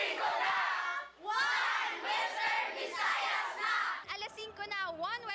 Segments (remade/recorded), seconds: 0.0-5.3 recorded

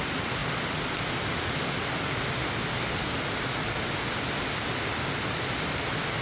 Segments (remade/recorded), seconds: 0.0-6.2 recorded

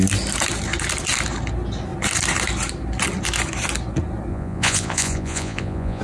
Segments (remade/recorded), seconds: 0.0-4.3 recorded; 4.3-6.0 remade

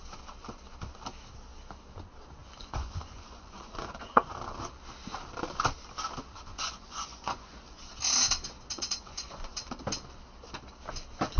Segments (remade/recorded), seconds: 0.0-2.4 recorded; 2.4-4.3 remade; 4.3-6.5 recorded; 6.5-7.8 remade; 7.8-8.7 recorded; 8.7-9.5 remade; 9.5-11.4 recorded

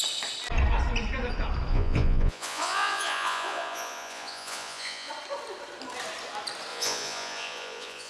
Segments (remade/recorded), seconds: 0.0-1.7 recorded; 1.7-5.1 remade; 5.1-6.7 recorded; 6.7-8.1 remade

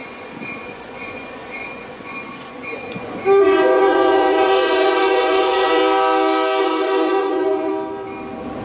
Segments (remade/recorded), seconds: 0.0-5.8 remade; 5.8-6.6 recorded; 6.6-7.7 remade; 7.7-8.6 recorded

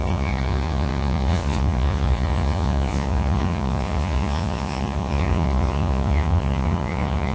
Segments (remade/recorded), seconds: 0.0-7.3 remade

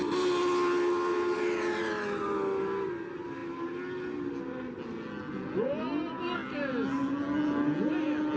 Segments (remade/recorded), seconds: 0.0-8.4 recorded